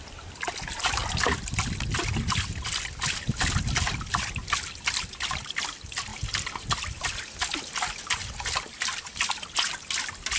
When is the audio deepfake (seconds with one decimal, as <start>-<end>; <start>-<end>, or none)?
none